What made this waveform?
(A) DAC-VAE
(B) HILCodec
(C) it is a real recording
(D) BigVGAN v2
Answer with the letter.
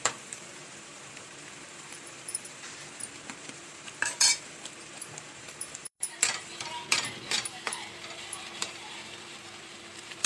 D